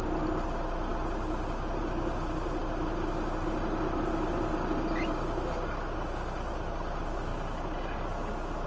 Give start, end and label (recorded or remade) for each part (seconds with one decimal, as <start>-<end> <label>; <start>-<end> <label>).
0.0-8.7 recorded